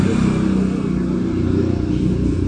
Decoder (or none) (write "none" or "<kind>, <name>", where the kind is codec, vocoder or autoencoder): none